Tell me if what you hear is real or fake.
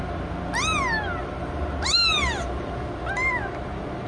real